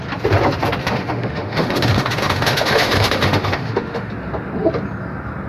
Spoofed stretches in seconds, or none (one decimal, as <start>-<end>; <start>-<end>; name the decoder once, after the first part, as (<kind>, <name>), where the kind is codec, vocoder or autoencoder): 0.8-4.1 (autoencoder, DAC-VAE)